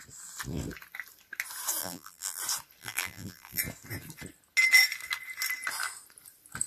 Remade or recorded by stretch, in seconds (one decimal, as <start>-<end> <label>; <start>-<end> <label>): 0.0-1.8 recorded; 1.8-2.4 remade; 2.4-2.8 recorded; 2.8-3.6 remade; 3.6-6.7 recorded